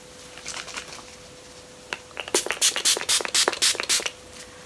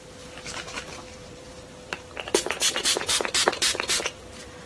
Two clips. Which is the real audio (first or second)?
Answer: first